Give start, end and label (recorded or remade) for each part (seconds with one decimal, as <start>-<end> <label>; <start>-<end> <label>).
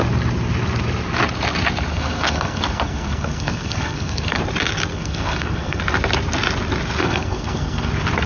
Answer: 0.0-1.9 recorded; 1.9-4.4 remade; 4.4-4.9 recorded; 4.9-5.8 remade; 5.8-7.0 recorded; 7.0-7.9 remade; 7.9-8.3 recorded